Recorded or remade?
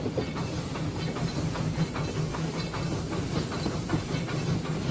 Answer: recorded